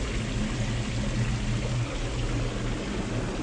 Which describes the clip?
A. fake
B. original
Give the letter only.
B